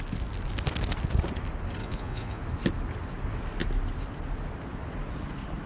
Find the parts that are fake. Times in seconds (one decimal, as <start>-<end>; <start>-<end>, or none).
1.8-2.4